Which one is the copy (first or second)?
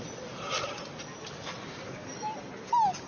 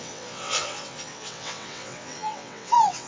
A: second